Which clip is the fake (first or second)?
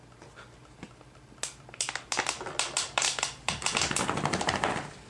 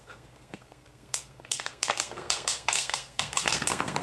second